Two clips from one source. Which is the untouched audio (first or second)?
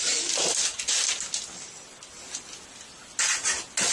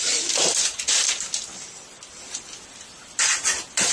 first